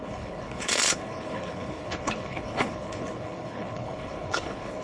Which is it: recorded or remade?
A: remade